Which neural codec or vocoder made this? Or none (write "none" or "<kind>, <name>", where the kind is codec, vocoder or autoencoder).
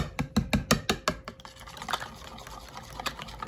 none